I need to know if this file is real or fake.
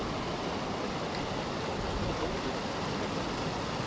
real